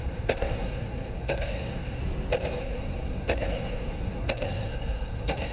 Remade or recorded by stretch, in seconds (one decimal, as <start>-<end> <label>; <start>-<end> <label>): 0.0-2.0 remade; 2.0-2.6 recorded; 2.6-5.5 remade